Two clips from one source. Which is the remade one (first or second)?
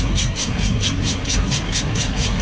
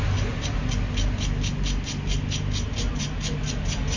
first